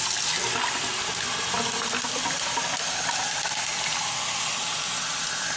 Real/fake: real